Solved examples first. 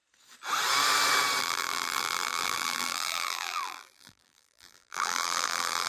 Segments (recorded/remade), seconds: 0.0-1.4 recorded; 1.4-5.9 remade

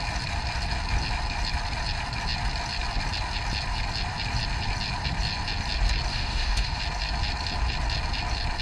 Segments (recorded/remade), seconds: 0.0-6.1 recorded; 6.1-6.8 remade; 6.8-8.6 recorded

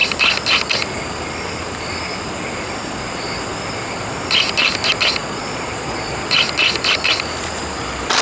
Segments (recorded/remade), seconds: 0.0-5.2 recorded; 5.2-6.1 remade; 6.1-8.2 recorded

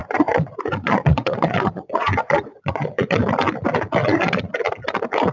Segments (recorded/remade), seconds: 0.0-3.2 remade; 3.2-4.0 recorded; 4.0-4.5 remade; 4.5-5.3 recorded

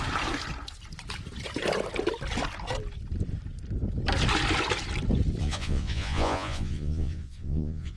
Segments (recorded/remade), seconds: 0.0-5.4 recorded; 5.4-8.0 remade

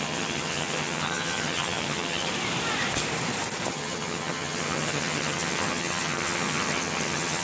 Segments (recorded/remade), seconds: 0.0-2.3 remade; 2.3-3.7 recorded; 3.7-7.4 remade

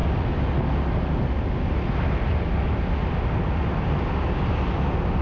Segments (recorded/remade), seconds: 0.0-5.2 recorded

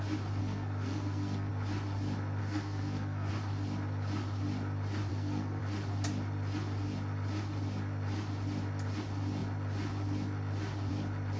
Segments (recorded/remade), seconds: 0.0-0.4 recorded; 0.4-1.5 remade; 1.5-2.4 recorded; 2.4-3.3 remade; 3.3-5.1 recorded; 5.1-5.6 remade; 5.6-11.4 recorded